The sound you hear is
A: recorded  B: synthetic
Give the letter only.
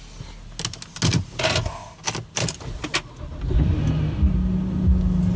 A